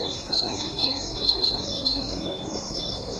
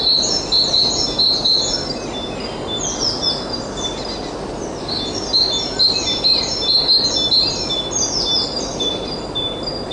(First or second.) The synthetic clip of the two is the first